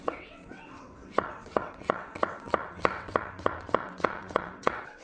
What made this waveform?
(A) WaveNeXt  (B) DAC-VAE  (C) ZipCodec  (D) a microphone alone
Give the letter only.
A